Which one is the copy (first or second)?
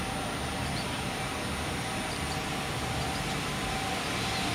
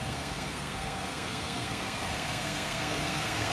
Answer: second